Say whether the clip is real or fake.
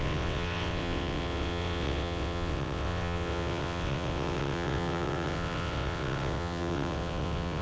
fake